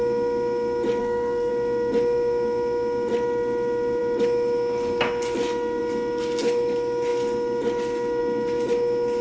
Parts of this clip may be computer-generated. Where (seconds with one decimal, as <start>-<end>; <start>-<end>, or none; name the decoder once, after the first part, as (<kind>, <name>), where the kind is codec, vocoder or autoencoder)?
1.0-1.5 (codec, SNAC)